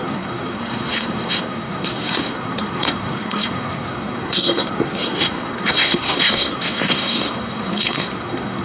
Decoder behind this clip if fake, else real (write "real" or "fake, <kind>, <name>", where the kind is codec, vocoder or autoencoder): fake, codec, SNAC